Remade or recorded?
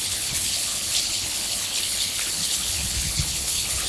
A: remade